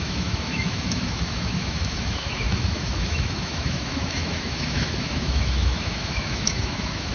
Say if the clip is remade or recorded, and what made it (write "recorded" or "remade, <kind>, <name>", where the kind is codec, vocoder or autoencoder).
remade, autoencoder, DAC-VAE